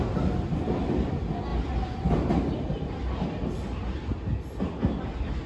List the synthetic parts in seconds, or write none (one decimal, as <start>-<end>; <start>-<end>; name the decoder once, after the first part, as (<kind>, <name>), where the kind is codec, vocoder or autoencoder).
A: none